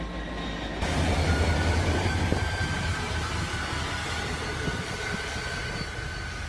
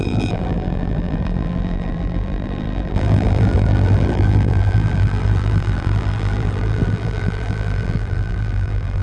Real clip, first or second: first